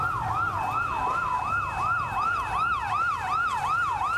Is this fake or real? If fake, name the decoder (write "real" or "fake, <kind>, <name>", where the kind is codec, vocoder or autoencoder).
real